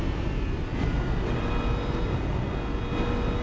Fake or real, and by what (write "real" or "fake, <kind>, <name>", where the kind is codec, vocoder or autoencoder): real